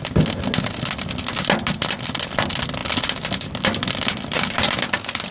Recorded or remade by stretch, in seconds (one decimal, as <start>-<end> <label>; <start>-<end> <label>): 0.0-5.3 recorded